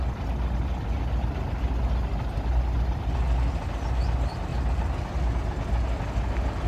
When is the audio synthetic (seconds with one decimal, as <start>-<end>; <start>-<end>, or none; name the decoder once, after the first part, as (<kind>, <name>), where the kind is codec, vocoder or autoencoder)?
none